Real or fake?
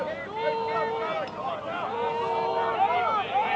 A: real